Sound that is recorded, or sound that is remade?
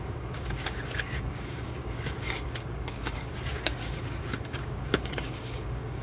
remade